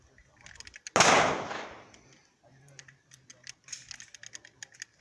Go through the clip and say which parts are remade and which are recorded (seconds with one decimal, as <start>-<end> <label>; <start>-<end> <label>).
0.0-5.0 recorded